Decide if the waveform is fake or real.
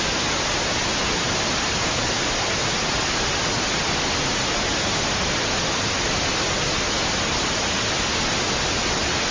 real